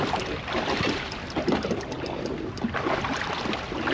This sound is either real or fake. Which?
real